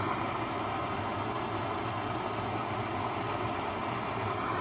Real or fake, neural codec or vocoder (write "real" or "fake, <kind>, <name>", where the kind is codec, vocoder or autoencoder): real